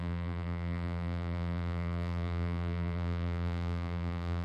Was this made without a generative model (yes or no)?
no